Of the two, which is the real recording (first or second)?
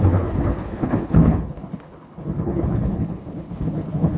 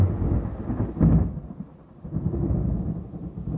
second